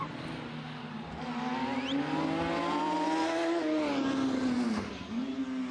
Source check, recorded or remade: recorded